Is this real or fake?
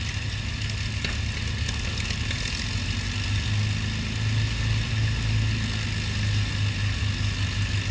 real